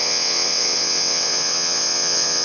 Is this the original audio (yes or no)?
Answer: no